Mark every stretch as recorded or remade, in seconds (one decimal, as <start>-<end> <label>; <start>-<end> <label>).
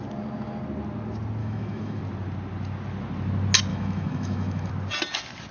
0.0-1.4 recorded; 1.4-2.0 remade; 2.0-3.7 recorded; 3.7-4.7 remade; 4.7-5.5 recorded